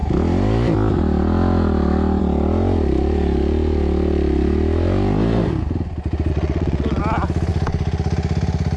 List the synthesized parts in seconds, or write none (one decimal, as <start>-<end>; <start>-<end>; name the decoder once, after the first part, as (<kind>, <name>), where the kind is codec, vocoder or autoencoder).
6.3-7.0 (vocoder, WaveNeXt)